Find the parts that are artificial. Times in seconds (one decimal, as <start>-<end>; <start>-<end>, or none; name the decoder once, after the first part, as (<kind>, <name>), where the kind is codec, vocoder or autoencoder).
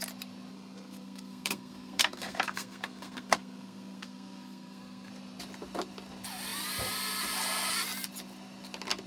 0.5-5.1 (codec, SNAC)